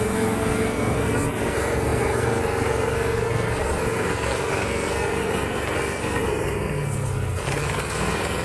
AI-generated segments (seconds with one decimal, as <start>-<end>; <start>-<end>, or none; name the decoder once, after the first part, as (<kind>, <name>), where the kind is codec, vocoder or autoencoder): 0.0-8.4 (codec, SNAC)